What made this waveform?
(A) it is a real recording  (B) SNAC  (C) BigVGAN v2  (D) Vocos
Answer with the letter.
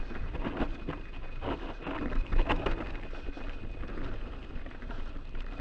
A